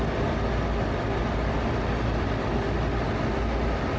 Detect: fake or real real